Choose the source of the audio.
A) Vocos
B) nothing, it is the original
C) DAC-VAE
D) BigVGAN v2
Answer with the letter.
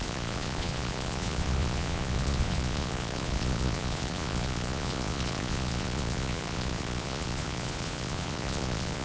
A